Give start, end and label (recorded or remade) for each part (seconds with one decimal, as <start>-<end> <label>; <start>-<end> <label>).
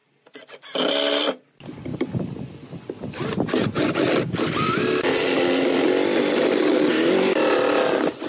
0.0-8.3 recorded